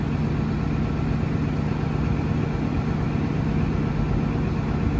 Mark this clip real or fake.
real